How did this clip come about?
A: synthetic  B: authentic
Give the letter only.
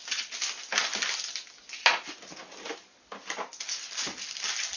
B